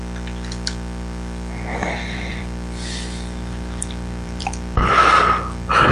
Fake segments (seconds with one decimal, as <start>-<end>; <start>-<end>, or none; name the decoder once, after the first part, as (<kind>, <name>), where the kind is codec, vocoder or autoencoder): 2.3-4.9 (vocoder, BigVGAN v2)